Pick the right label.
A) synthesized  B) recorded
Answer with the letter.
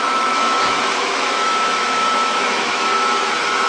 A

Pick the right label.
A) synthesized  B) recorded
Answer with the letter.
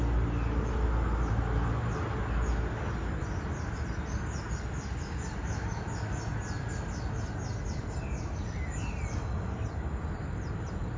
B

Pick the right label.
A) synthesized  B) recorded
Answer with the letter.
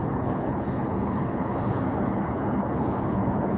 A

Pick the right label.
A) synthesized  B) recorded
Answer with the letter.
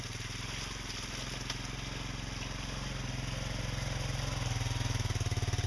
B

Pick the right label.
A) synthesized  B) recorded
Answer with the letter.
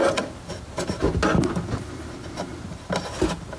B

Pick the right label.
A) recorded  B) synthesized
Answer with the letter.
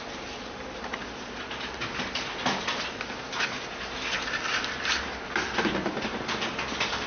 A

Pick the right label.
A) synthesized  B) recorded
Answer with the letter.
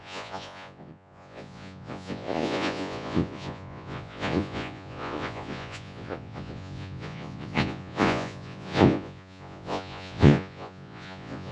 A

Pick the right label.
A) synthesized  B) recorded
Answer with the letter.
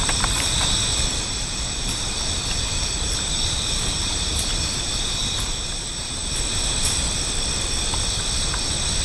A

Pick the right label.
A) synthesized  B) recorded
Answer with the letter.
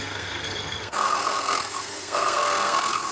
A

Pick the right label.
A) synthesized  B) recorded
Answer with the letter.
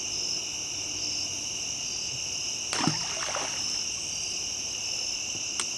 B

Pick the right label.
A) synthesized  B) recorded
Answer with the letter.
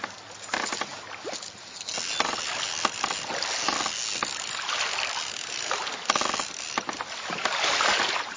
B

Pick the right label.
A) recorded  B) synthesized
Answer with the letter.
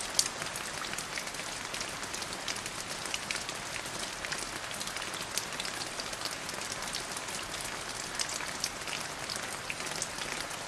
A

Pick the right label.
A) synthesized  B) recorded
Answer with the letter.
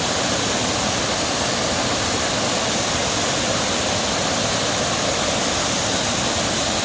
B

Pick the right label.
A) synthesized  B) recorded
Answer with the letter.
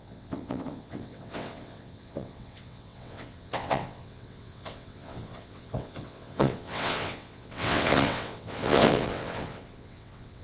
A